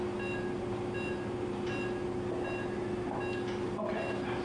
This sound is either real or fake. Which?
real